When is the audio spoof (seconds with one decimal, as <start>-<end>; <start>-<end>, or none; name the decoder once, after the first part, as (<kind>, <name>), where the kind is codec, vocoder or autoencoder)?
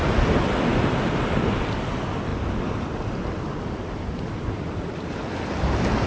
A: none